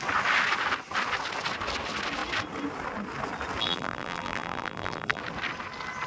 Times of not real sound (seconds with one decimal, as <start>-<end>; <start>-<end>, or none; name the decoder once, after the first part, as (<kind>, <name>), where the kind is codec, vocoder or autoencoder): 3.6-5.2 (vocoder, BigVGAN v2)